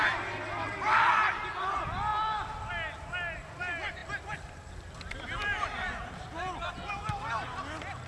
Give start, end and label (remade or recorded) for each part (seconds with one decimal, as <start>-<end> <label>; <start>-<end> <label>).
0.0-8.1 recorded